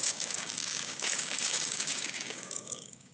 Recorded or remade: remade